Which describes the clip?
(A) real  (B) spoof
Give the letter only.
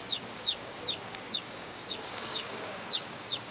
B